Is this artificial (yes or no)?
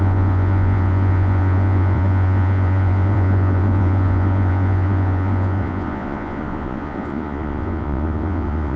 yes